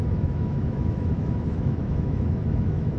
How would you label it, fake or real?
fake